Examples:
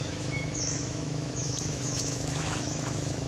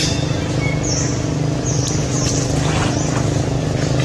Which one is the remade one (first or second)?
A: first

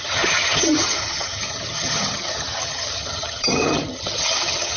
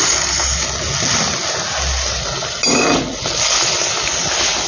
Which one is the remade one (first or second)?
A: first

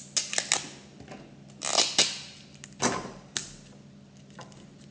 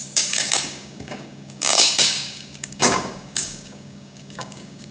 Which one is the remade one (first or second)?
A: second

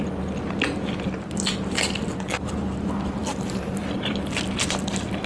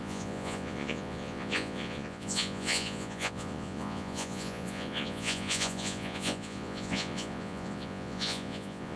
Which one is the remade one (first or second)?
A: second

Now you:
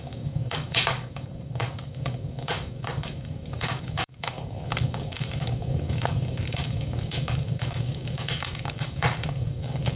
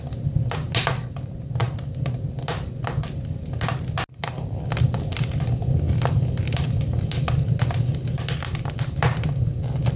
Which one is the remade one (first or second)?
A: first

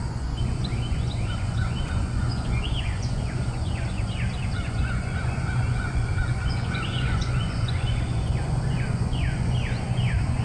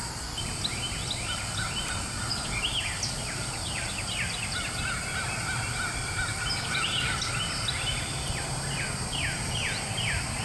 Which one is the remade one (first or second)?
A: first